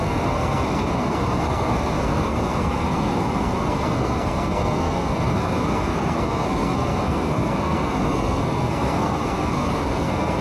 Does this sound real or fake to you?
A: fake